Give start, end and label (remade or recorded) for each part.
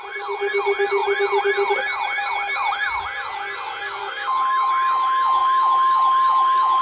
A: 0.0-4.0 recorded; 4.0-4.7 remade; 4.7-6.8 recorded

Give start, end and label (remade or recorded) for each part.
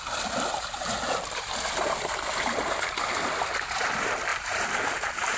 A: 0.0-4.3 recorded; 4.3-5.4 remade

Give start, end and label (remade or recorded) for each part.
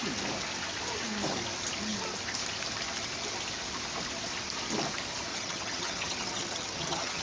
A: 0.0-5.3 recorded; 5.3-7.2 remade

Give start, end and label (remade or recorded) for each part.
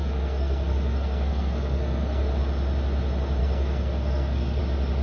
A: 0.0-2.3 remade; 2.3-3.4 recorded; 3.4-4.6 remade; 4.6-5.0 recorded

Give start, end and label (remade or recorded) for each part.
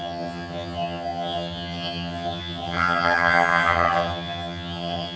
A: 0.0-5.2 remade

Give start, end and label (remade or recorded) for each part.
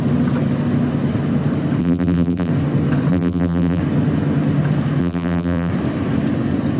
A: 0.0-1.8 recorded; 1.8-2.5 remade; 2.5-3.1 recorded; 3.1-3.8 remade; 3.8-5.0 recorded; 5.0-5.7 remade; 5.7-6.8 recorded